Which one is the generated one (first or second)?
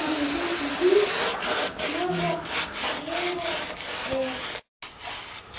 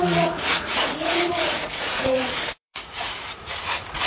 second